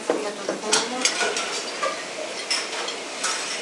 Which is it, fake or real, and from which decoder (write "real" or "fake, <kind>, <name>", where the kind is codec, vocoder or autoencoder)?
real